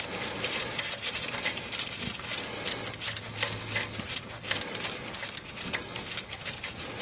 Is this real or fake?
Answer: real